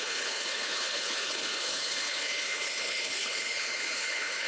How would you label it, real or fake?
fake